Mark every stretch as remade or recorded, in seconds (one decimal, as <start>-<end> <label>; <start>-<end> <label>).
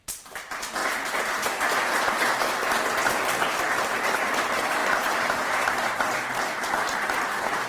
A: 0.0-7.7 recorded